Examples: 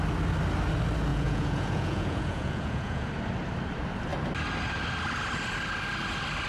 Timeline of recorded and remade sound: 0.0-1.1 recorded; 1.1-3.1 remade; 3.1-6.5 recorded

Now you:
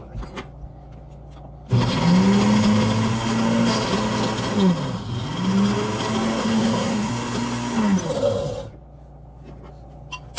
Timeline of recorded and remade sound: 0.0-6.4 recorded; 6.4-7.1 remade; 7.1-10.4 recorded

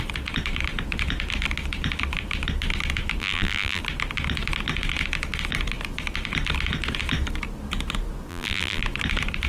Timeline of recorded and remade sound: 0.0-3.2 recorded; 3.2-3.8 remade; 3.8-8.3 recorded; 8.3-8.8 remade; 8.8-9.5 recorded